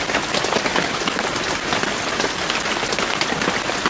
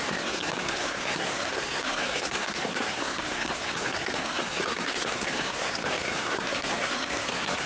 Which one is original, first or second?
first